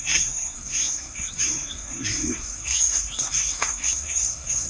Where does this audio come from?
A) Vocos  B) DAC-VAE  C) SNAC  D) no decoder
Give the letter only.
C